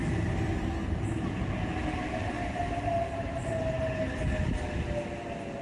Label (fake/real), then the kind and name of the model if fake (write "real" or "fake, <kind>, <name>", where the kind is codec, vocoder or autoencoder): real